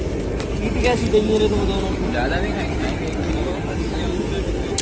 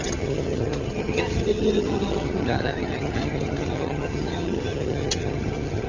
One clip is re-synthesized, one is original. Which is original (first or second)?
first